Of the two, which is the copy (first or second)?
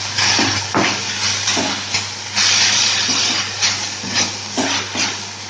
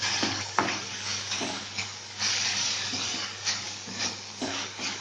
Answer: second